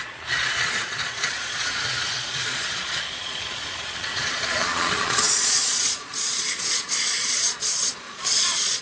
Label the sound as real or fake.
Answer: fake